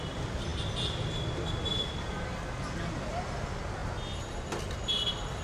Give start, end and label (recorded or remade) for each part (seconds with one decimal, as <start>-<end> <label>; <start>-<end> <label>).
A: 0.0-5.4 recorded